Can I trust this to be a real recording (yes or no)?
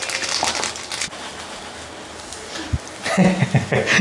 yes